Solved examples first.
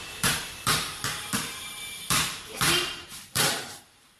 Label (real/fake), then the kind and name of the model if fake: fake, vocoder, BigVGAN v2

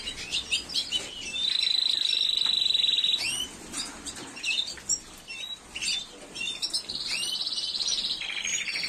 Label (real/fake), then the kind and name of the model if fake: fake, vocoder, BigVGAN v2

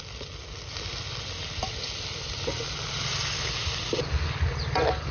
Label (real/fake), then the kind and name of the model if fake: real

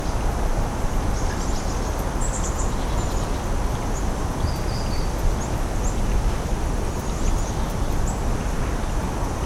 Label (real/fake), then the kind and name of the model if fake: real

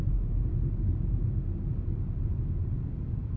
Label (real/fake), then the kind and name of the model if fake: fake, vocoder, BigVGAN v2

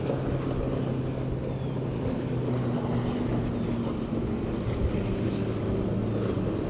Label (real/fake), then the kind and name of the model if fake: real